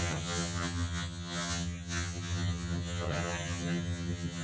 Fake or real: fake